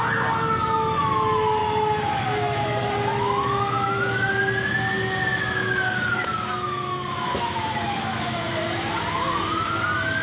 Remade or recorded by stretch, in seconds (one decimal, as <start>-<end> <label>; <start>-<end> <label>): 0.0-1.6 recorded; 1.6-2.6 remade; 2.6-3.1 recorded; 3.1-4.3 remade; 4.3-5.3 recorded; 5.3-8.4 remade; 8.4-10.2 recorded